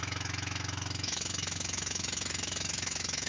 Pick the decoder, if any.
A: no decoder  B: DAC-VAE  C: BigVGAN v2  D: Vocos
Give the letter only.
B